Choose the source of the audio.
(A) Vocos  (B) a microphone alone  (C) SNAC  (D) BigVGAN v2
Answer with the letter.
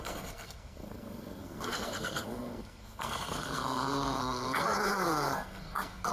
C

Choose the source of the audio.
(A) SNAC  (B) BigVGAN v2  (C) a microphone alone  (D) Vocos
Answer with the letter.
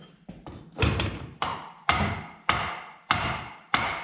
B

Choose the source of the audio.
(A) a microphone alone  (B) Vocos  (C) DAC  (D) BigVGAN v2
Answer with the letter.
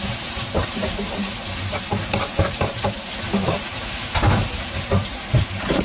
D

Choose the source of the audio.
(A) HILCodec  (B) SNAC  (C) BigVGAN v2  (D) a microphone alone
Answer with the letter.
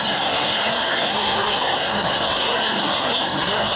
B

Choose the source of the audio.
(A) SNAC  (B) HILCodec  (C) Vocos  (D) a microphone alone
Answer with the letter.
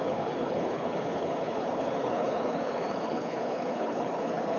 B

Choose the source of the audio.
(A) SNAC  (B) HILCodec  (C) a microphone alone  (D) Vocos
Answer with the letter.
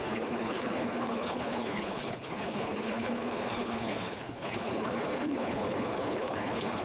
B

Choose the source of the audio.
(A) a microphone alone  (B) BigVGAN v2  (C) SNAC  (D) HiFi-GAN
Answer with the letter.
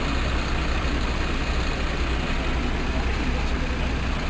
A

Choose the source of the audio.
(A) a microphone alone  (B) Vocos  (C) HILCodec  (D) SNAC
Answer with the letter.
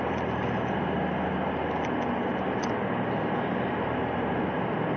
A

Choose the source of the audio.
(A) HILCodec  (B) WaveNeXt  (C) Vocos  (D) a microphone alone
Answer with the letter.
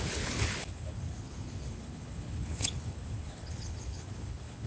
A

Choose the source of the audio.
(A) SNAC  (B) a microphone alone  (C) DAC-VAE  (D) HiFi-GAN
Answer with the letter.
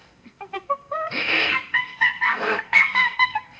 A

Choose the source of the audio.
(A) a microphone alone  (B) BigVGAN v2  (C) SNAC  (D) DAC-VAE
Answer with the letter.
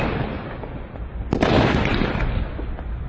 A